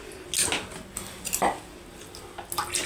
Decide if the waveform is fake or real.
real